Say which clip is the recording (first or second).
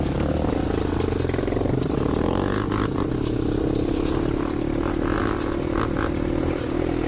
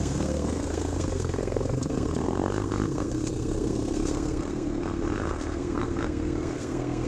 first